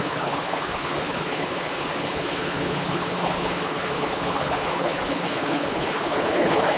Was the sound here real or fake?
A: fake